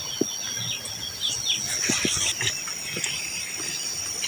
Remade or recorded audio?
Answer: recorded